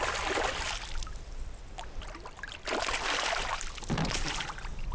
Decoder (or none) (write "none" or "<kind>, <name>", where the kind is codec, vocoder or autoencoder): none